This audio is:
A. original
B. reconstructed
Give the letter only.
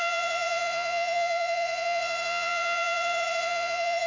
B